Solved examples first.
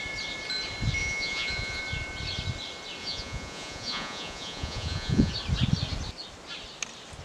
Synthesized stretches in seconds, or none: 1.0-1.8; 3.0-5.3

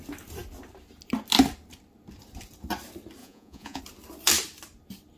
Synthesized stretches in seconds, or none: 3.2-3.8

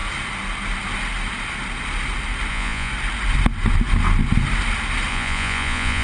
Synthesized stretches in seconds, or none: 2.5-2.9; 5.1-6.0

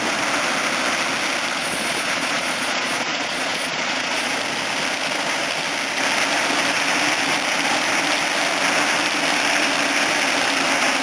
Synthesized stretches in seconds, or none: 1.6-4.3

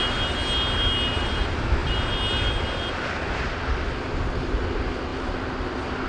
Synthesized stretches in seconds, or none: none

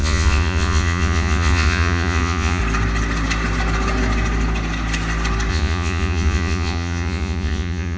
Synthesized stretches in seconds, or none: 0.0-2.6; 5.5-8.0

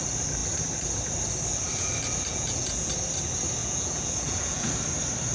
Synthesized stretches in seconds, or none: 2.3-2.9; 3.6-4.7